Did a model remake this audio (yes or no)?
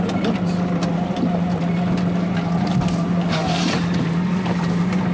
no